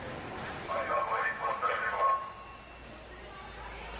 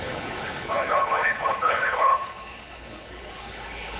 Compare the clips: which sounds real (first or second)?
first